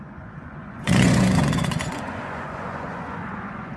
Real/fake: fake